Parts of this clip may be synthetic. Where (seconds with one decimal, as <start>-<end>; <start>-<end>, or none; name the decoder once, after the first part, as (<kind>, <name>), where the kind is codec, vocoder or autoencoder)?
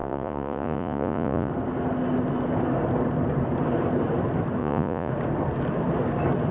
0.0-1.5 (vocoder, Vocos); 4.6-5.1